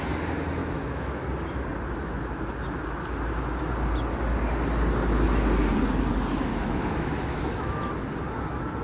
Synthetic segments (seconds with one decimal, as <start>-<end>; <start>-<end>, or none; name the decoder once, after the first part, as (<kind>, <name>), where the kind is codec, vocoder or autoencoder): 0.6-1.2 (autoencoder, DAC-VAE); 6.5-7.9